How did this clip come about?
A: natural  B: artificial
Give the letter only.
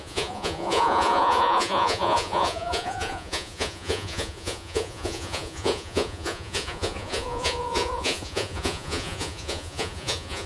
B